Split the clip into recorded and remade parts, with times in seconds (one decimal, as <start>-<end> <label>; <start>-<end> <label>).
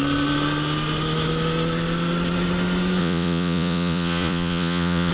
0.0-3.0 recorded; 3.0-5.1 remade